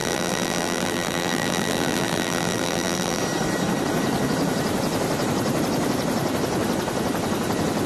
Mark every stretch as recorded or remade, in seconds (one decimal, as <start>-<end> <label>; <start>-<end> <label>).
0.0-3.2 remade; 3.2-7.9 recorded